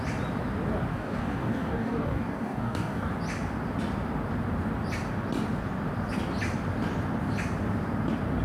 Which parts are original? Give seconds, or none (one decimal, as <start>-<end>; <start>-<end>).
0.0-0.9; 3.1-8.4